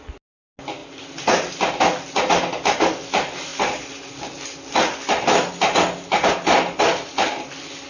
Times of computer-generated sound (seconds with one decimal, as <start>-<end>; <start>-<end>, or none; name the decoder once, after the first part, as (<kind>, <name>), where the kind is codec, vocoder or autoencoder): none